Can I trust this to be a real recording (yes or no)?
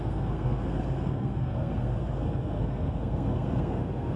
no